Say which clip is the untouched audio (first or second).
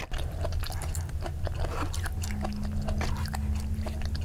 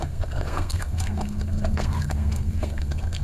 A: first